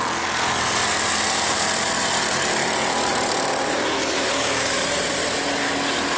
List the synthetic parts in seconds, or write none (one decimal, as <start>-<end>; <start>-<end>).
3.1-5.5